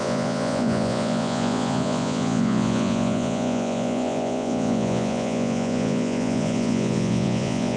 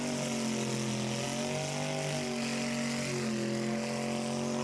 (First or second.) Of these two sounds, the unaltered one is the second